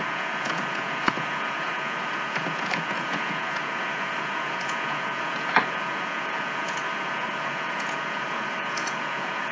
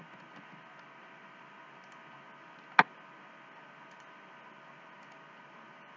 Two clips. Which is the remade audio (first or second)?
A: first